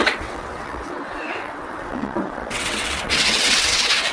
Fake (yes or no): yes